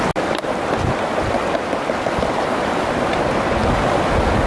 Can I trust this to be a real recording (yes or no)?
yes